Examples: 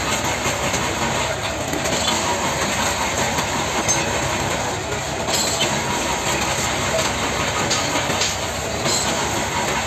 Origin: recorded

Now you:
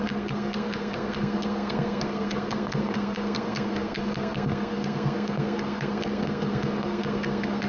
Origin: remade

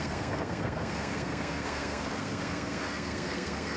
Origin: remade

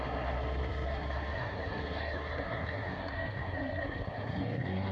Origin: remade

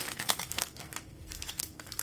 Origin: remade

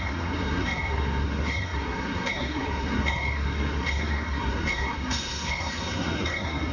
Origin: remade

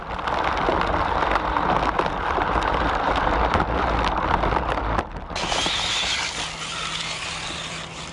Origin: recorded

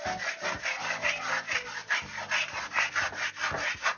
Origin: recorded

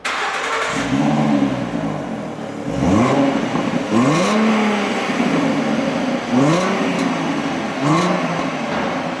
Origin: recorded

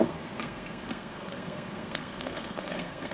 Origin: remade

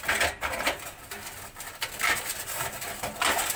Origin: recorded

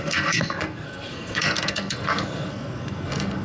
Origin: remade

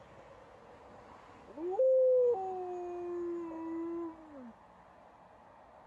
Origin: recorded